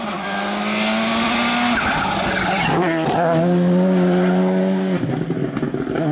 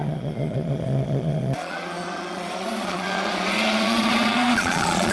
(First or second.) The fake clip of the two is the second